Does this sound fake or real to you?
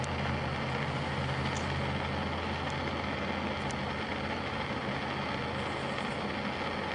real